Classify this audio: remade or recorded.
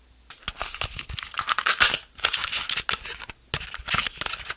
recorded